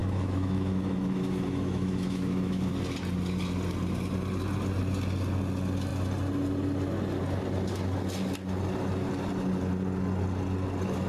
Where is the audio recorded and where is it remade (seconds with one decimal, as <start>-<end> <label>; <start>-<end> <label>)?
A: 0.0-2.7 remade; 2.7-11.1 recorded